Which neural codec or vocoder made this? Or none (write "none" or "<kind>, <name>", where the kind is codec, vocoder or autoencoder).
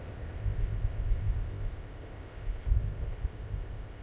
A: codec, ZipCodec